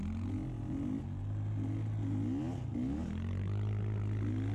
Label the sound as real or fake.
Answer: real